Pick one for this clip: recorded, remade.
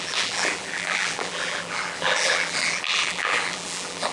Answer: remade